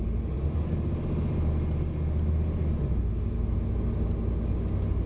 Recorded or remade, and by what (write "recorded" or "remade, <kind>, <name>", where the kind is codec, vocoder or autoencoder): recorded